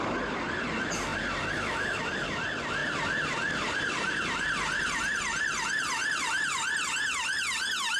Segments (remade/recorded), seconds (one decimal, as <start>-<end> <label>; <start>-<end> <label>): 0.0-2.8 recorded; 2.8-6.9 remade; 6.9-8.0 recorded

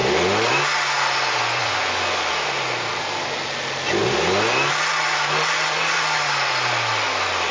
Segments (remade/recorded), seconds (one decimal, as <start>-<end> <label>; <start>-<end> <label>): 0.0-1.4 recorded; 1.4-2.3 remade; 2.3-7.5 recorded